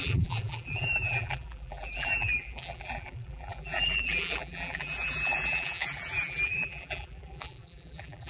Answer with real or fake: fake